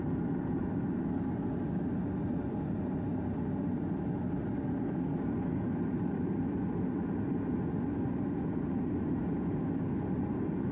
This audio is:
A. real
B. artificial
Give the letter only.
A